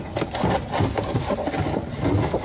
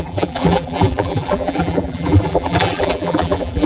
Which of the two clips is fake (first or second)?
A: second